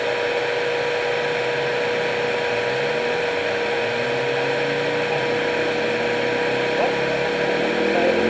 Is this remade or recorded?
recorded